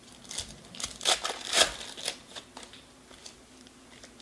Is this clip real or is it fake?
real